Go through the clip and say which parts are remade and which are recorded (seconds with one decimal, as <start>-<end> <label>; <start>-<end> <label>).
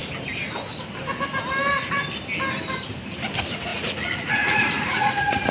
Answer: 0.0-3.7 recorded; 3.7-5.5 remade